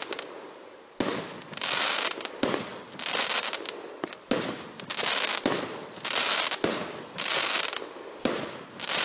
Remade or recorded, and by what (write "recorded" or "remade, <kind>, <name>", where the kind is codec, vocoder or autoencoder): recorded